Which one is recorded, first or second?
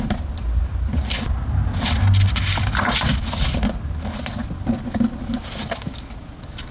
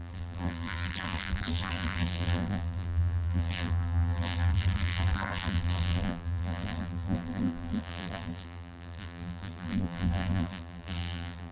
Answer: first